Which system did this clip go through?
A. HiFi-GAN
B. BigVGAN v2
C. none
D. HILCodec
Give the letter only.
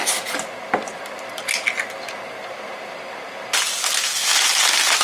C